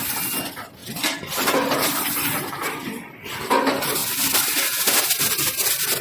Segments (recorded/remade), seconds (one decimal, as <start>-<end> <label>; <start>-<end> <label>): 0.0-0.8 recorded; 0.8-2.5 remade; 2.5-4.0 recorded; 4.0-4.8 remade; 4.8-6.0 recorded